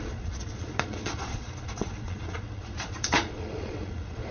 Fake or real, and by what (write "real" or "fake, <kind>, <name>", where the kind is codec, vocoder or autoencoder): fake, vocoder, Vocos